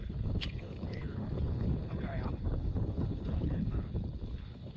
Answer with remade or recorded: remade